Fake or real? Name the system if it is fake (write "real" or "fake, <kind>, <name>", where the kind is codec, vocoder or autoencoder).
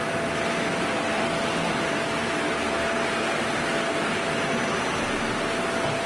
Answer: real